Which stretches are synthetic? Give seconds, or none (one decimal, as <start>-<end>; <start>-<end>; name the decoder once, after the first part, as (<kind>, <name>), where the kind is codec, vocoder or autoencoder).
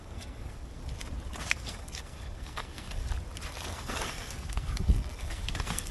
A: 0.0-0.8 (codec, SNAC); 1.4-3.0; 3.7-5.9